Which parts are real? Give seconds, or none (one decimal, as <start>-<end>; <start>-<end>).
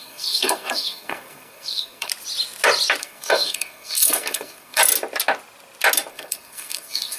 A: 2.1-3.0; 4.8-6.1